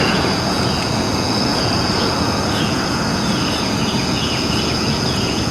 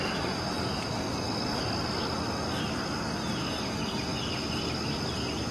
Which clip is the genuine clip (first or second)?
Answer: second